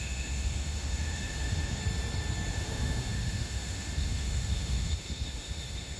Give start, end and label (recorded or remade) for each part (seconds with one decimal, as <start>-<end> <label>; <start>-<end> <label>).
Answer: 0.0-1.8 remade; 1.8-2.5 recorded; 2.5-6.0 remade